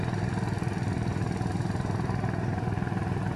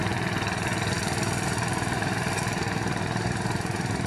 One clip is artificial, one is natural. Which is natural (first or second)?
first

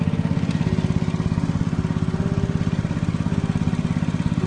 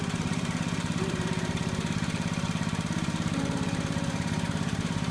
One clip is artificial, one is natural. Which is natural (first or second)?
first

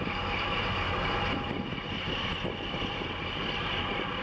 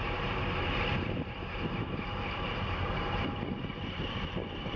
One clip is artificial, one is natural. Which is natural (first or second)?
first